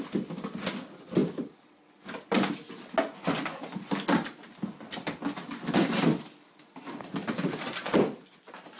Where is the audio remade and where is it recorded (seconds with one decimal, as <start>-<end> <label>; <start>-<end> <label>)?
0.0-8.8 recorded